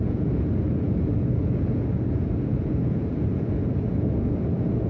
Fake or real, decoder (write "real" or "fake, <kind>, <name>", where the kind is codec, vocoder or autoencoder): fake, vocoder, Vocos